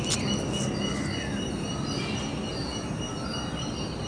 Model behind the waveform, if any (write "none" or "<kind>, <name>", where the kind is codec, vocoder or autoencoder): none